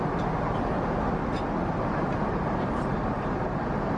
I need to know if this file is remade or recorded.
recorded